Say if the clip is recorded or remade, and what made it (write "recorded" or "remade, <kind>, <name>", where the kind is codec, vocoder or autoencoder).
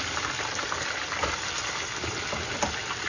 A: remade, vocoder, BigVGAN v2